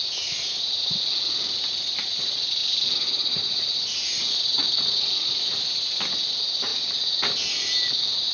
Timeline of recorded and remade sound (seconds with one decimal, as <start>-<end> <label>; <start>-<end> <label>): 0.0-8.3 recorded